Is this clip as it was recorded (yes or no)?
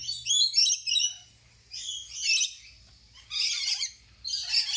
yes